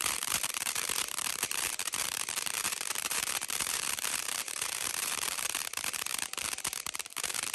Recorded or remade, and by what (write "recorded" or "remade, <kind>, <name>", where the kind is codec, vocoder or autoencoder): remade, vocoder, BigVGAN v2